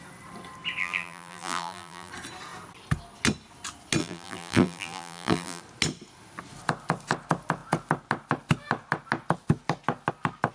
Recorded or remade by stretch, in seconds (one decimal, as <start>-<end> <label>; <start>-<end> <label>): 0.0-0.8 recorded; 0.8-2.1 remade; 2.1-4.0 recorded; 4.0-5.6 remade; 5.6-10.5 recorded